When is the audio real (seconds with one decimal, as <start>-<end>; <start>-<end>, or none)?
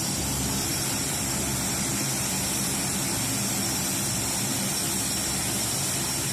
0.0-6.3